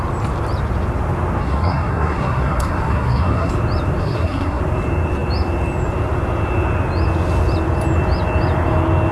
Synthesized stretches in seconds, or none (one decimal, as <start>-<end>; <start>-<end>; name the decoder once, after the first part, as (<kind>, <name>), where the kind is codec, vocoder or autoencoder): 1.4-3.5 (codec, SNAC); 4.0-4.6